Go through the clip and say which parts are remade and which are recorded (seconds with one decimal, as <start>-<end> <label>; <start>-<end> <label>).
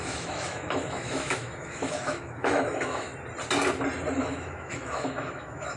0.0-3.1 remade; 3.1-4.2 recorded; 4.2-5.8 remade